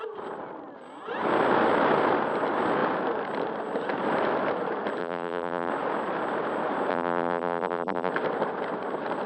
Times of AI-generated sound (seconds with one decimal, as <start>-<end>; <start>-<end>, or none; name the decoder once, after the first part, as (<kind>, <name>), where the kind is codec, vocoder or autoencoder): 5.0-5.7 (vocoder, BigVGAN v2); 6.9-8.1